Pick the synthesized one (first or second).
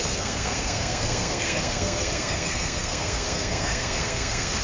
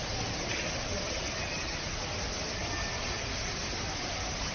first